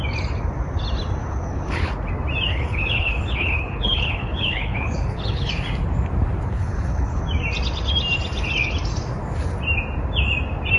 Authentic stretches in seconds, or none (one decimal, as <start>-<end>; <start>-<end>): 0.0-1.2; 1.9-2.5; 5.5-6.5; 7.2-10.8